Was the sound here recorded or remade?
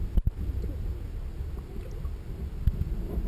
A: recorded